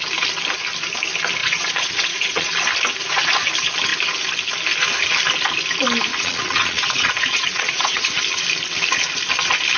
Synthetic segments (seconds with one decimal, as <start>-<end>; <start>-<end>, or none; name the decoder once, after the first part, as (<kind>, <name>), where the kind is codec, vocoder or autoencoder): 1.4-2.5 (vocoder, Vocos); 6.1-8.2